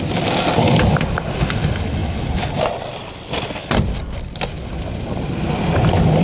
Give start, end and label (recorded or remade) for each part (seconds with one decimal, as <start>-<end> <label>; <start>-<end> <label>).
0.0-6.2 remade